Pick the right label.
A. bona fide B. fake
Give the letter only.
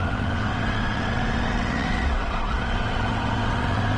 B